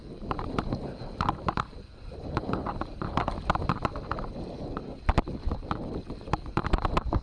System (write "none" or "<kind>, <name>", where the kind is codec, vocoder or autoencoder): none